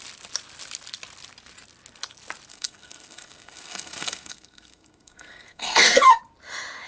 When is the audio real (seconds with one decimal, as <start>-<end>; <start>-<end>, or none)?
0.0-2.5; 6.2-6.9